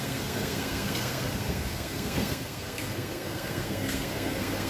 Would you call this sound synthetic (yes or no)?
yes